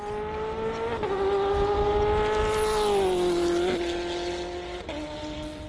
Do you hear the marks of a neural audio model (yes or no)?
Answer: no